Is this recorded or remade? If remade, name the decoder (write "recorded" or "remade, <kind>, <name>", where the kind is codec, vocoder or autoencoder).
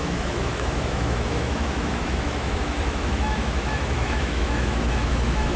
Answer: remade, autoencoder, DAC-VAE